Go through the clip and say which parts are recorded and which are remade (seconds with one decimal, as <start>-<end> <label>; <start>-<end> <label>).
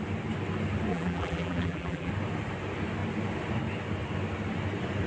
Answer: 0.0-0.9 recorded; 0.9-2.1 remade; 2.1-5.1 recorded